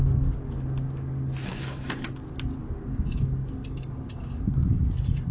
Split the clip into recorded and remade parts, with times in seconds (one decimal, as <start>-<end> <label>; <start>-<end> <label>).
0.0-1.4 recorded; 1.4-2.1 remade; 2.1-2.8 recorded; 2.8-3.5 remade; 3.5-5.3 recorded